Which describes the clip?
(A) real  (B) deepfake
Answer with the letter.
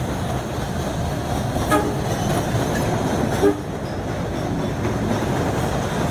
A